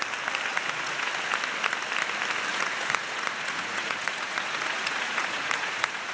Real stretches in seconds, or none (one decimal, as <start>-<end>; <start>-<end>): 0.0-0.5; 1.1-2.5